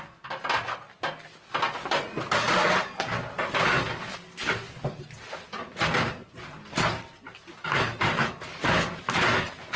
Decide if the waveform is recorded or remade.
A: recorded